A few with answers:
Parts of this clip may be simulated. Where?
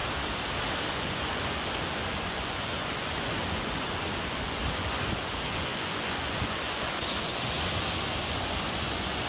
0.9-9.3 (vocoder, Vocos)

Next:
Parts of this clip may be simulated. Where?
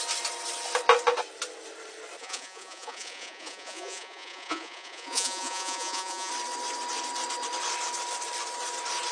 2.2-6.3 (vocoder, Vocos)